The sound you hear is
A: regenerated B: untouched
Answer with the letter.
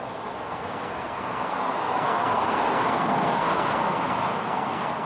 A